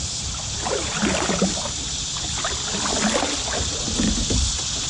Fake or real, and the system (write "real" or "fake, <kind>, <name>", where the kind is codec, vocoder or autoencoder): real